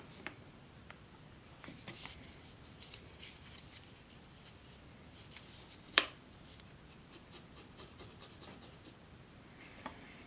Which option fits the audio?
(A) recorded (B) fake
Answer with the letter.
B